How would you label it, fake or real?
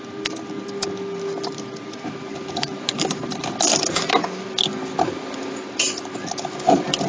real